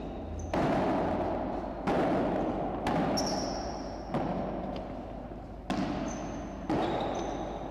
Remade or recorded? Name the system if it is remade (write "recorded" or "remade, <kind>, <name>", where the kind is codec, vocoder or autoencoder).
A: recorded